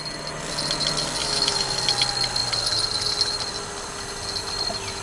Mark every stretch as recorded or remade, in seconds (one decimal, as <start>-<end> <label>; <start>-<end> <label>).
0.0-1.2 recorded; 1.2-1.8 remade; 1.8-5.0 recorded